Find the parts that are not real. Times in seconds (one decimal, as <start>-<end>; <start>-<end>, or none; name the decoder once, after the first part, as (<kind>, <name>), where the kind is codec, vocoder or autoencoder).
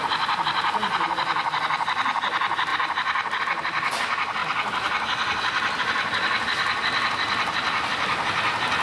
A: none